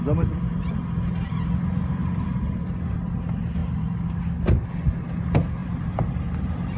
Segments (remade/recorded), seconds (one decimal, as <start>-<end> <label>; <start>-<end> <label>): 0.0-2.0 recorded; 2.0-2.6 remade; 2.6-3.6 recorded; 3.6-4.2 remade; 4.2-5.6 recorded; 5.6-6.8 remade